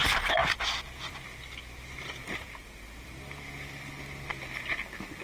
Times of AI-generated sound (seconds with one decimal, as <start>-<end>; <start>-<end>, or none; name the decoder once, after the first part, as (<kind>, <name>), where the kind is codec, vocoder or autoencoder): 0.4-3.5 (vocoder, BigVGAN v2)